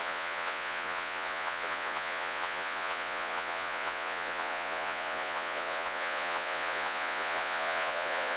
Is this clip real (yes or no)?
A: no